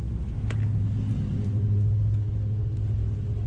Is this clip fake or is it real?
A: real